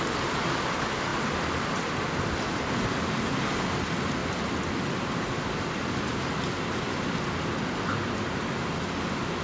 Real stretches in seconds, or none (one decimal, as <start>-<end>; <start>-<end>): 0.0-9.4

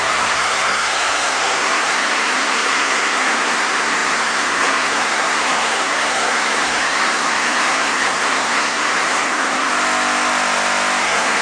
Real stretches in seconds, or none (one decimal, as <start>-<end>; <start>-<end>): 9.7-11.0

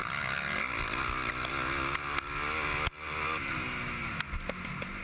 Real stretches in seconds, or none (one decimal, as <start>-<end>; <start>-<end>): 0.0-5.0

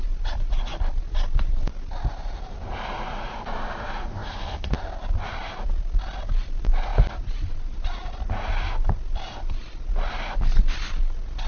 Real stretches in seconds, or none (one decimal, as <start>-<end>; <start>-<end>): 0.0-11.5

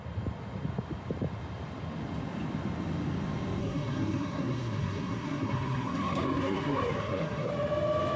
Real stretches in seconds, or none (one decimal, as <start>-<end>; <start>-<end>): 0.0-3.6; 7.5-8.2

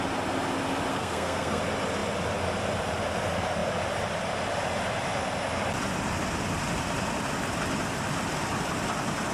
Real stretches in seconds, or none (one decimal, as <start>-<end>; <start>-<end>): 0.0-0.9; 1.6-9.3

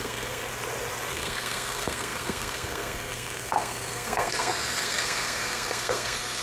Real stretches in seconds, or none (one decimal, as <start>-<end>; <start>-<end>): 0.4-1.1